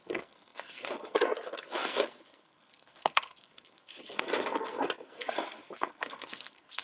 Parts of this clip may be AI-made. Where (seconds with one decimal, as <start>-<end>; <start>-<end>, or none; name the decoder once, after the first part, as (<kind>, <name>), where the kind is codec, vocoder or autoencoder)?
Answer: 0.0-6.8 (codec, SNAC)

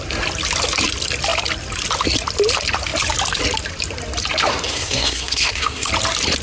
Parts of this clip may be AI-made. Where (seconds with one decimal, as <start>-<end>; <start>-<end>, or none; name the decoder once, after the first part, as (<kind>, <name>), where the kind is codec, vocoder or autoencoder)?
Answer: 4.5-5.9 (codec, SNAC)

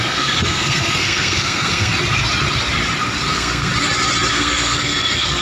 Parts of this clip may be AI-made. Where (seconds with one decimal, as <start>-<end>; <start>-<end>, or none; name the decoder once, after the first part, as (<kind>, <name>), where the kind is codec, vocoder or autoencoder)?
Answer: 0.0-1.9 (codec, SNAC); 3.3-3.7; 4.3-5.4

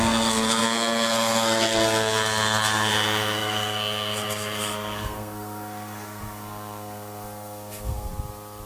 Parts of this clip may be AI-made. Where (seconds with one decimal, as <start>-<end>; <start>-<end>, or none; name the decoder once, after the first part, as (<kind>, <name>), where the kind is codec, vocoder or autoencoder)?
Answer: 0.0-8.1 (codec, SNAC)

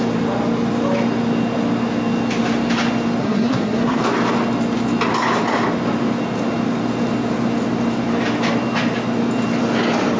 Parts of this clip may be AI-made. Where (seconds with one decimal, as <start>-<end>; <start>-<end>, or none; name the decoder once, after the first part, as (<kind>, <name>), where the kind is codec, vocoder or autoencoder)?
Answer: 3.2-4.0 (codec, SNAC)

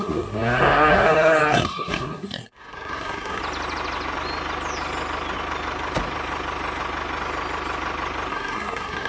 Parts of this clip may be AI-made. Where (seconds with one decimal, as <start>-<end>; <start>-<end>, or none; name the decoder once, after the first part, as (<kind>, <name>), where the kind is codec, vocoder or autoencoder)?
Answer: 0.0-3.4 (codec, SNAC); 8.3-9.1

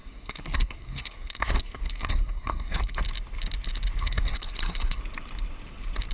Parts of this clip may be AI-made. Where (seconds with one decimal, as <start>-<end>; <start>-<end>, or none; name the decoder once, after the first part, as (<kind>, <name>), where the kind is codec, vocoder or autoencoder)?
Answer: 0.0-3.0 (codec, SNAC); 4.0-5.0